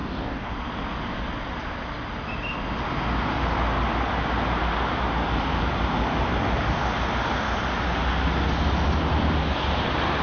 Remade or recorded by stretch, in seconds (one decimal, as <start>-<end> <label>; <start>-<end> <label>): 0.0-0.5 remade; 0.5-10.2 recorded